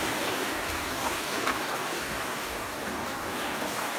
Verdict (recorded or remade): remade